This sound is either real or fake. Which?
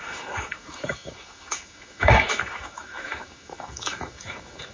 fake